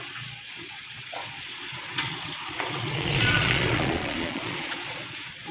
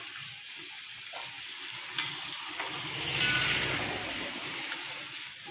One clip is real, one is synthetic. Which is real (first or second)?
second